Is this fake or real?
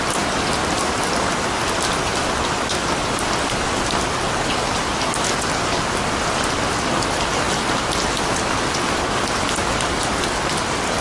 real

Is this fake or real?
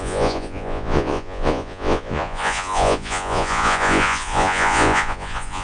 fake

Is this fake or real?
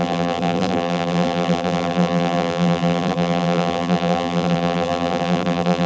fake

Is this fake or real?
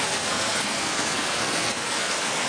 fake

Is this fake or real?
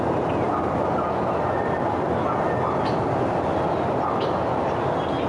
real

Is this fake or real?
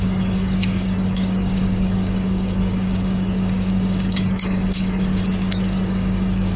fake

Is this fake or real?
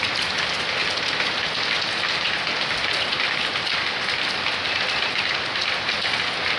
real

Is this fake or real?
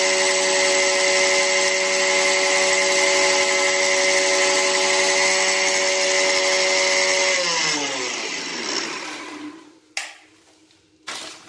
real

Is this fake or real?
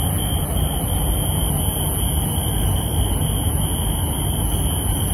real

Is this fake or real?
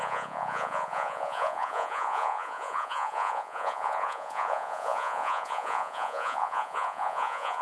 fake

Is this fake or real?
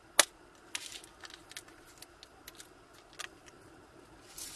real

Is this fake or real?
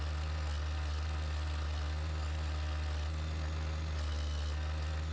real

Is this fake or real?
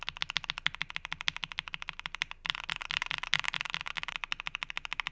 real